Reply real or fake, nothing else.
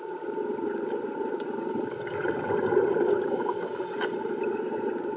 fake